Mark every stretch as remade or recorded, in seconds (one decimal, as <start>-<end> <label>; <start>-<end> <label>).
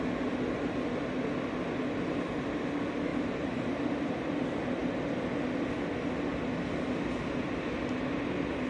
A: 0.0-3.1 recorded; 3.1-4.3 remade; 4.3-8.7 recorded